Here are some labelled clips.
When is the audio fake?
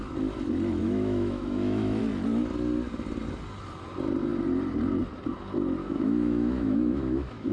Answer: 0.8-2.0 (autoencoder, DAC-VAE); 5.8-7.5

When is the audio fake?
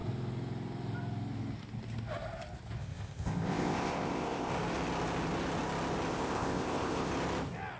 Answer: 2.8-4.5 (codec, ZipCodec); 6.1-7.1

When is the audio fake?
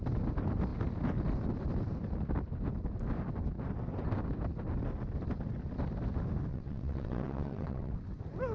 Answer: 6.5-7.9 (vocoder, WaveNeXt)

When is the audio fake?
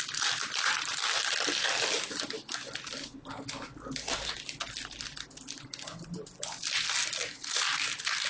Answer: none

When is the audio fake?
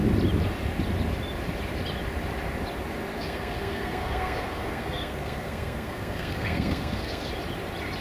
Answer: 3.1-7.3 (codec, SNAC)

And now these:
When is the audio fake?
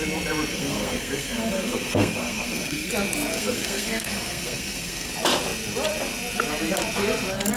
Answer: 0.5-2.9 (codec, SNAC); 3.3-5.1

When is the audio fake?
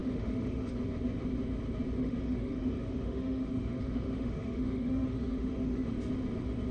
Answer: 0.0-0.7 (autoencoder, DAC-VAE); 2.0-5.9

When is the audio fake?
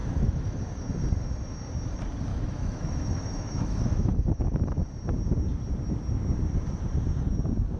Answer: 0.0-0.6 (autoencoder, DAC-VAE); 2.3-4.8